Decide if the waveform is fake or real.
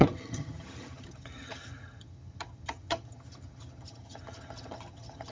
fake